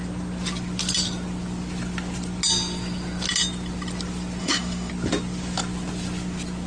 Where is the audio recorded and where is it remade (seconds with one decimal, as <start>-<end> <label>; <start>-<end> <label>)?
0.0-4.4 recorded; 4.4-4.9 remade; 4.9-6.7 recorded